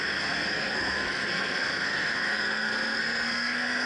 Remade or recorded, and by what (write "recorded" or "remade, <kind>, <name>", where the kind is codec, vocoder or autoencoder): remade, codec, SNAC